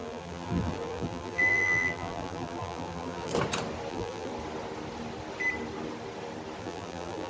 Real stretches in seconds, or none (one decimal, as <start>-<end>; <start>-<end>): 3.3-3.9; 4.3-6.6